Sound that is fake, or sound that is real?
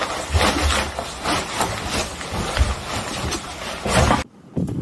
real